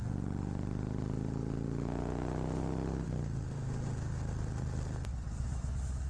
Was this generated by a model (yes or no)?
no